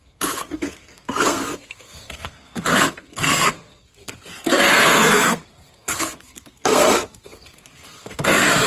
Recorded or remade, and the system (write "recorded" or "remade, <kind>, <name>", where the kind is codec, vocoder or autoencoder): remade, codec, SNAC